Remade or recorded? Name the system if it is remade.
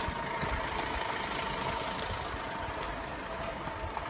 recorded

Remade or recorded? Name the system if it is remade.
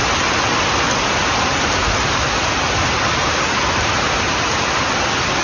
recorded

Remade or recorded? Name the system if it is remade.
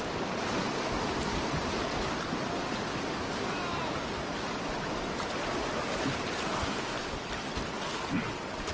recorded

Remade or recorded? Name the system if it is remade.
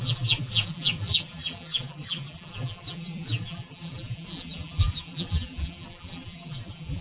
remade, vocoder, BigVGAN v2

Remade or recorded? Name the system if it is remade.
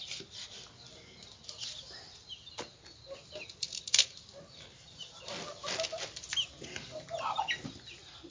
recorded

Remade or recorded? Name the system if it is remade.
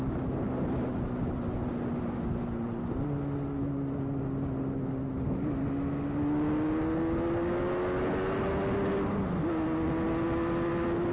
recorded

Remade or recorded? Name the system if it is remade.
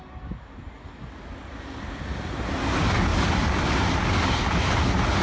recorded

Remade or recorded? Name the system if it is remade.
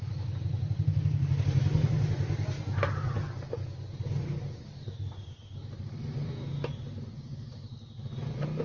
recorded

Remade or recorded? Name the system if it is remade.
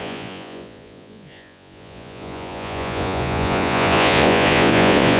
remade, vocoder, Vocos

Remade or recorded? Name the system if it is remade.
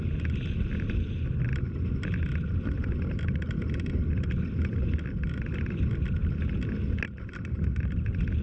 recorded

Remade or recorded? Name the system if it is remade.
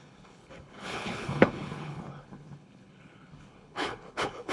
remade, codec, HILCodec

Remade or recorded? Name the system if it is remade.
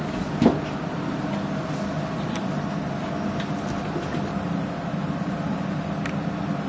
recorded